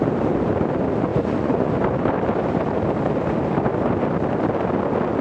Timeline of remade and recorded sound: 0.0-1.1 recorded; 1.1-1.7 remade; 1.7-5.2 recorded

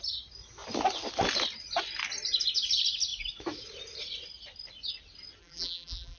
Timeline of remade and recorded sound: 0.0-5.4 recorded; 5.4-6.2 remade

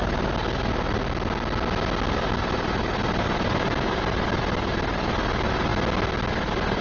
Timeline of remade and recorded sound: 0.0-1.0 remade; 1.0-2.1 recorded; 2.1-5.7 remade; 5.7-6.3 recorded; 6.3-6.8 remade

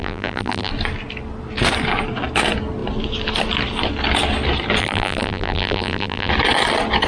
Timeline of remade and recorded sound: 0.0-0.7 remade; 0.7-4.8 recorded; 4.8-6.3 remade; 6.3-7.1 recorded